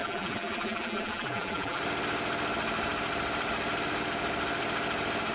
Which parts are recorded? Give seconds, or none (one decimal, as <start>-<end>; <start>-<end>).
1.8-5.3